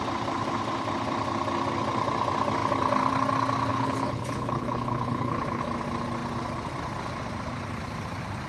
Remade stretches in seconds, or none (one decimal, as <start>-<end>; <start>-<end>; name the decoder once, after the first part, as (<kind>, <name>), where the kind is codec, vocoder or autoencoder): 3.7-5.6 (codec, HILCodec)